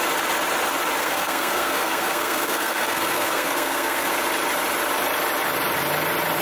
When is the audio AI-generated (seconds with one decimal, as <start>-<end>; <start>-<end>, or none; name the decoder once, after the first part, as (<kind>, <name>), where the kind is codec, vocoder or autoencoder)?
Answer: 1.0-4.1 (codec, SNAC)